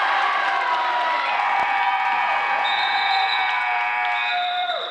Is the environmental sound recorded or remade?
remade